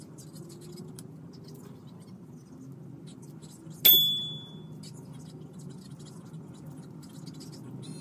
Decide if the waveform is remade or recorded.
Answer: recorded